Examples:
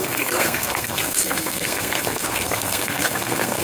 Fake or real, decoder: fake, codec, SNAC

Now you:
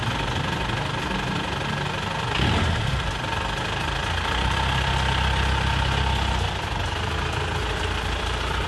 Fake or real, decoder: real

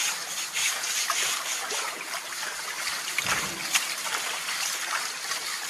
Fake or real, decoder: real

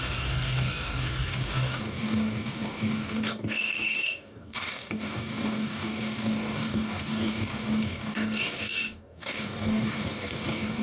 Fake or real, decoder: fake, codec, DAC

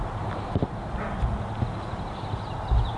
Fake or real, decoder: real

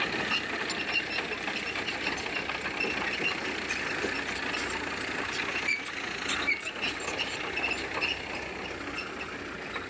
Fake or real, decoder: real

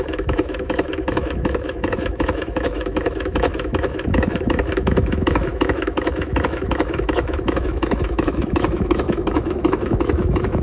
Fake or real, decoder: fake, autoencoder, DAC-VAE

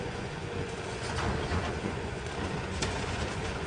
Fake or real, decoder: fake, vocoder, Vocos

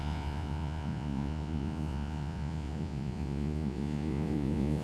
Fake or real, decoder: fake, vocoder, Vocos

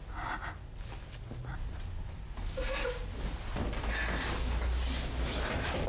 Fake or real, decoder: real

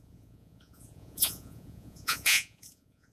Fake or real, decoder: fake, vocoder, Vocos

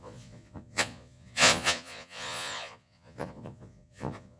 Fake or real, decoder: fake, vocoder, Vocos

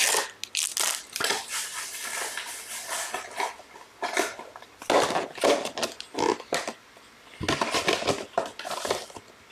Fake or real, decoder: real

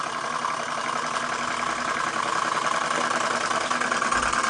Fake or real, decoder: real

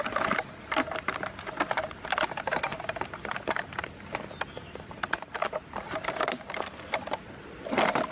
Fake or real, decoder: real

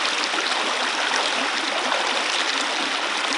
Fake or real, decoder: real